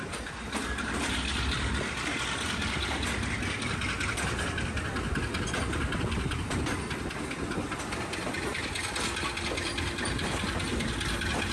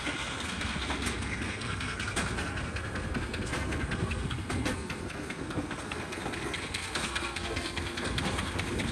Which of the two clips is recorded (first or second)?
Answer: first